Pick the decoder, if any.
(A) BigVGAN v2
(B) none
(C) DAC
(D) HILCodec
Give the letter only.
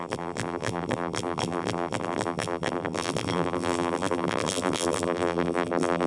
A